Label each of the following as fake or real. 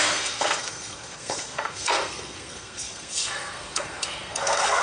fake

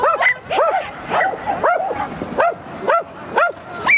real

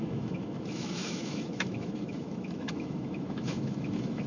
fake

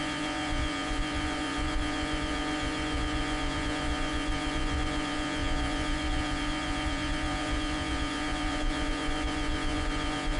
fake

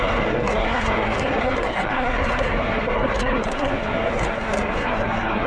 fake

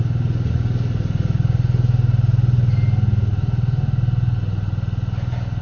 real